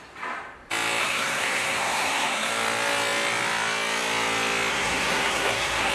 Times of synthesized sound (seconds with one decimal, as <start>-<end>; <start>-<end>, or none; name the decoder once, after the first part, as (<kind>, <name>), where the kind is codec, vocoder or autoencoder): 1.0-2.5 (codec, SNAC); 4.7-5.9